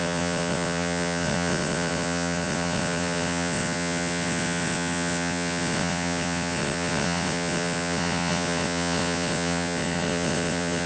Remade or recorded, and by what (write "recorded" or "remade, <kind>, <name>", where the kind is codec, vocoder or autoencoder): remade, vocoder, WaveNeXt